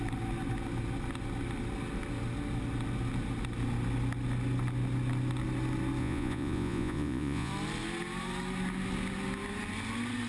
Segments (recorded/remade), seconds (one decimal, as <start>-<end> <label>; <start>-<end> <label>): 0.0-6.0 recorded; 6.0-7.5 remade; 7.5-10.3 recorded